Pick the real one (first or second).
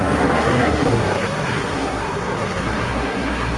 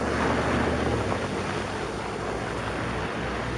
second